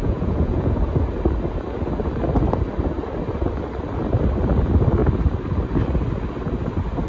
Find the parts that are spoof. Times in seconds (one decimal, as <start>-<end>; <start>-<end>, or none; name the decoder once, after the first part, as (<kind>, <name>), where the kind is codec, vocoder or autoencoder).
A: 0.0-0.7 (vocoder, Vocos)